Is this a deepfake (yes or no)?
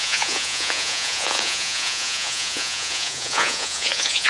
yes